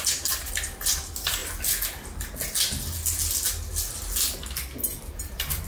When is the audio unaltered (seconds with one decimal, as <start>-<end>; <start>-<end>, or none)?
1.4-4.8

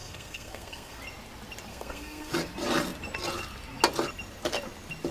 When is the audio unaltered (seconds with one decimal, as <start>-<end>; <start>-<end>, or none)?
1.0-1.7; 2.3-5.1

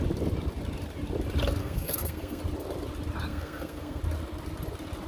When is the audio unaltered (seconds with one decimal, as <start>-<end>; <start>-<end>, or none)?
0.0-1.6; 2.4-3.3; 4.0-5.1

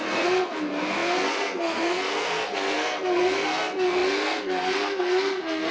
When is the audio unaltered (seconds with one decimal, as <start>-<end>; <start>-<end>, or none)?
none

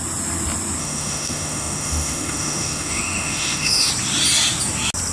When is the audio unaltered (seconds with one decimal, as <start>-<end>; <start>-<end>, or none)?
0.0-0.8; 3.9-5.1

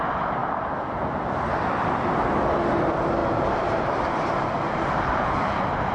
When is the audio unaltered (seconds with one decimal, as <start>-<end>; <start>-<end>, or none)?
0.0-3.2

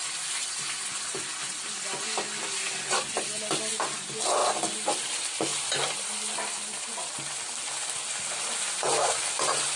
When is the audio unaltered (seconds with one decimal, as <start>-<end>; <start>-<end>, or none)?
0.0-9.8